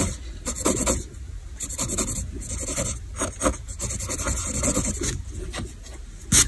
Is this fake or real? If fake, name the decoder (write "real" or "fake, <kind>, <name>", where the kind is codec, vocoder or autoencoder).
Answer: real